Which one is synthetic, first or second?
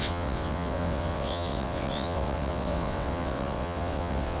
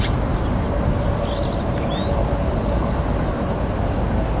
first